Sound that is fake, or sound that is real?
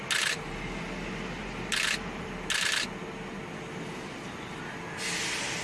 real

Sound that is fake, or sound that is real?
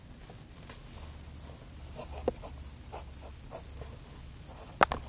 real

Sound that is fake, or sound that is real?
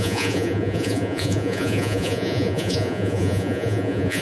fake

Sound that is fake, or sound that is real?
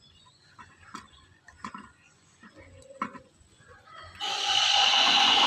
fake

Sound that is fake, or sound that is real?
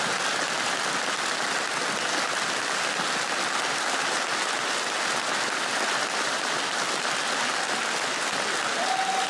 real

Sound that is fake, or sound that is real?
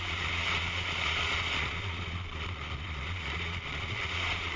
fake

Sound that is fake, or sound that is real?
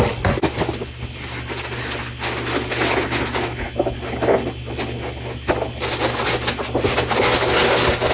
real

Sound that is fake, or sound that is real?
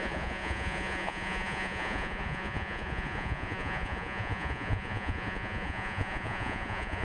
fake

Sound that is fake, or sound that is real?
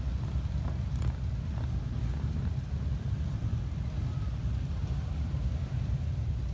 real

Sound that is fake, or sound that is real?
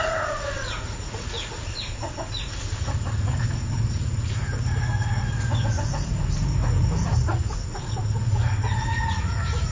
fake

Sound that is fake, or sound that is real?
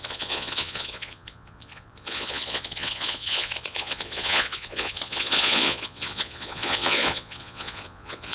fake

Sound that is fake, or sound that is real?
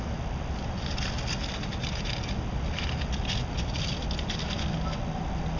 real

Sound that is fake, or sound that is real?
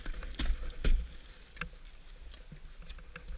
real